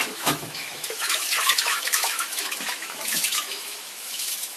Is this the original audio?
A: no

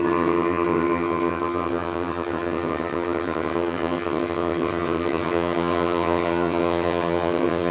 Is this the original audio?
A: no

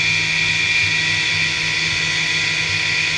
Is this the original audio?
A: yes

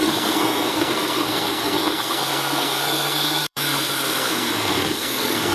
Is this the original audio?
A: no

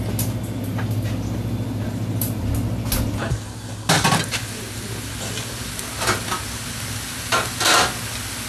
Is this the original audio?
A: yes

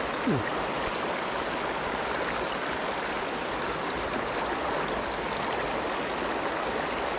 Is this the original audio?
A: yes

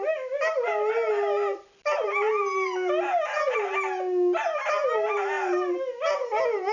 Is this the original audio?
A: yes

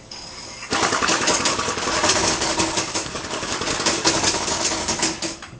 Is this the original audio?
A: no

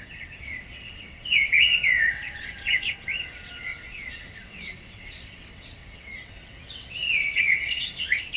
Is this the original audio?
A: no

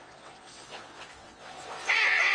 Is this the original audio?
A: no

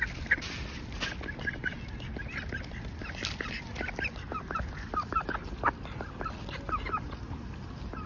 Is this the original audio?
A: yes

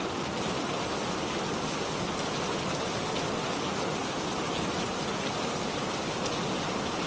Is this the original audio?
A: yes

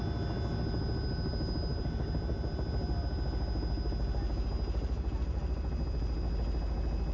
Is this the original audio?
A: yes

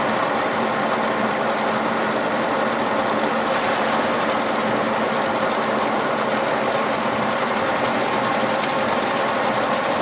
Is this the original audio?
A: yes